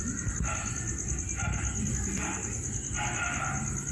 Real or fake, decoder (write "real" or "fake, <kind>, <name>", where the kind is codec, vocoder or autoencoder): real